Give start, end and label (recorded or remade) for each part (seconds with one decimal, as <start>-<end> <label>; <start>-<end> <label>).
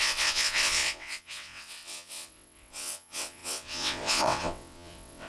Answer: 0.0-5.3 remade